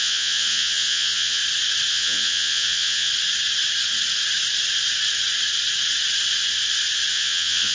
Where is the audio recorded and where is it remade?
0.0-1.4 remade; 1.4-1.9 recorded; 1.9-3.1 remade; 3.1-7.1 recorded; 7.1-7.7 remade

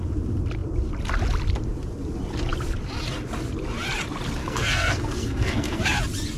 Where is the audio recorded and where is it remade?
0.0-4.4 recorded; 4.4-5.8 remade; 5.8-6.4 recorded

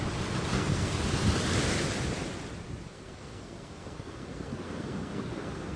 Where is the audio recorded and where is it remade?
0.0-0.5 recorded; 0.5-1.0 remade; 1.0-2.9 recorded; 2.9-5.8 remade

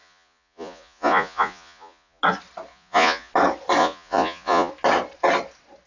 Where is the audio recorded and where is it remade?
0.0-2.2 remade; 2.2-2.7 recorded; 2.7-3.3 remade; 3.3-3.8 recorded; 3.8-4.7 remade; 4.7-5.9 recorded

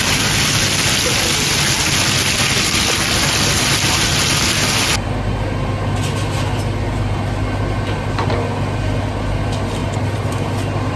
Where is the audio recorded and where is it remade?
0.0-11.0 recorded

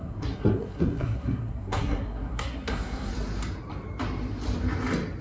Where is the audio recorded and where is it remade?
0.0-3.1 remade; 3.1-5.2 recorded

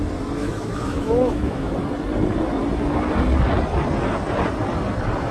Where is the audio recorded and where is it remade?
0.0-0.4 recorded; 0.4-1.7 remade; 1.7-5.3 recorded

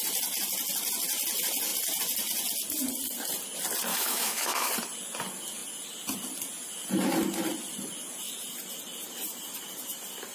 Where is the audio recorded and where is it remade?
0.0-3.9 recorded; 3.9-4.7 remade; 4.7-10.3 recorded